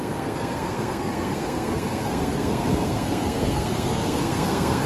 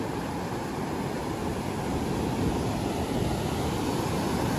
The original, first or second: second